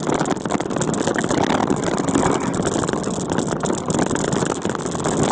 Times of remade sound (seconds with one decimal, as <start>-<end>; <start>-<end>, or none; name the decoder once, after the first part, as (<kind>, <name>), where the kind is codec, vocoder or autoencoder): none